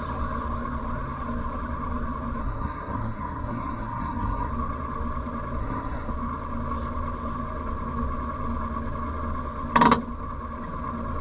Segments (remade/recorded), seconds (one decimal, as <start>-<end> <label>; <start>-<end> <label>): 0.0-2.4 recorded; 2.4-4.5 remade; 4.5-5.6 recorded; 5.6-6.1 remade; 6.1-11.2 recorded